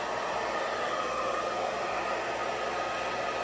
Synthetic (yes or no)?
no